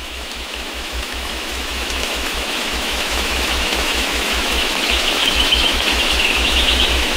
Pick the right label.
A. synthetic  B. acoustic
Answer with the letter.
A